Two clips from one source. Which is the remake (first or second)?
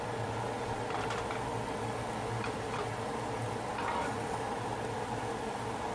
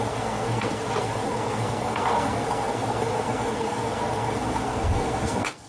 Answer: second